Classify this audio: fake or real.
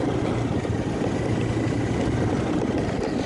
real